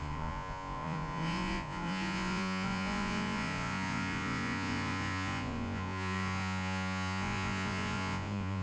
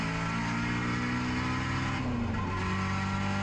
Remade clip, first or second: first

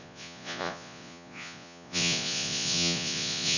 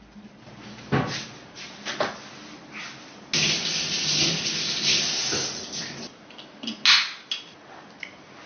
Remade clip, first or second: first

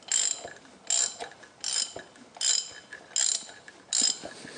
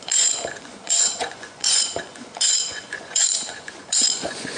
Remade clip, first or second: second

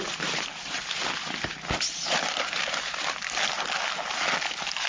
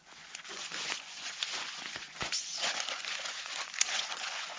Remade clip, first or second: second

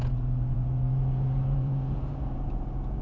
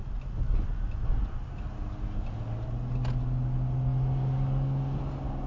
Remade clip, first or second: first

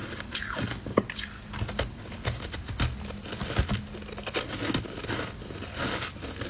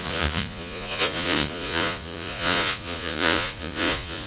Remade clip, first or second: second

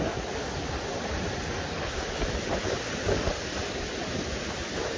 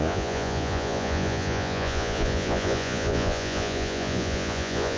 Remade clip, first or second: second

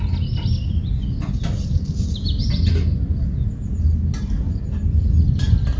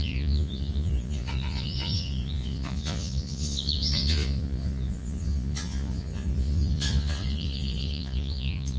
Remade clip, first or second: second